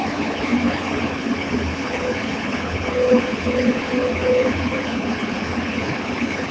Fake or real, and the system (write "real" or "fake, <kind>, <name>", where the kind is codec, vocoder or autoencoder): fake, codec, HILCodec